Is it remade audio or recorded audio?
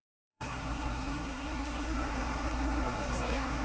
remade